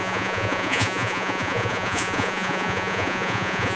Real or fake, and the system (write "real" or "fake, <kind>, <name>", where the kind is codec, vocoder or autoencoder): fake, vocoder, Vocos